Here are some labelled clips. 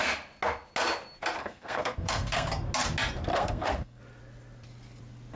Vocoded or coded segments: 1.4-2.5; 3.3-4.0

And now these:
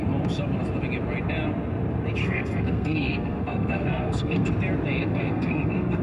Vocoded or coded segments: 2.2-4.5; 5.0-6.0

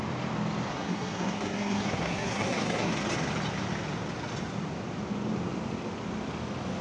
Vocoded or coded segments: 0.7-2.9

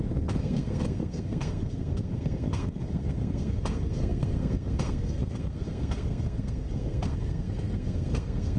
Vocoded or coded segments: 0.0-8.6

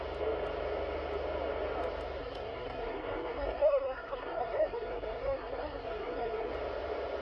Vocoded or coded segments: 2.2-6.5

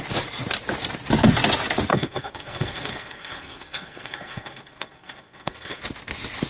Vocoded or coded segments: 1.9-5.8

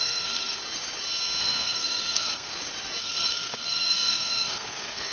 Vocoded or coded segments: 0.0-0.6; 1.4-2.5; 3.0-5.1

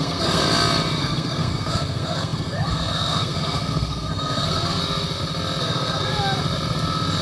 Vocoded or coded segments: 0.0-0.4; 1.0-4.8; 5.6-6.1